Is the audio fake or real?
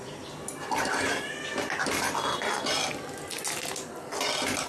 real